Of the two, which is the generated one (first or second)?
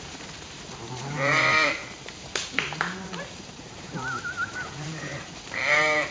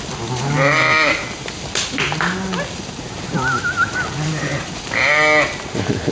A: first